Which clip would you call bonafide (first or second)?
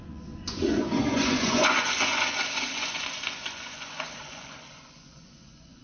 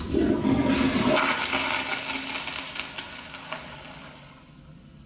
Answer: second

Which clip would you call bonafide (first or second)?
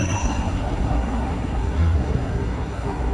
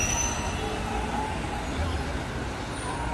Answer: second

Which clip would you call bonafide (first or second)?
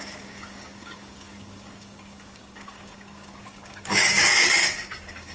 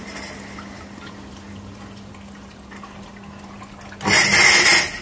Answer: second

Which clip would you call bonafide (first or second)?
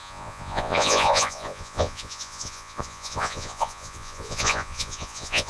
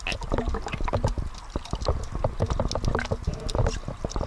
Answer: second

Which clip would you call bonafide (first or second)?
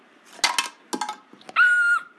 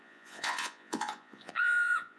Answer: first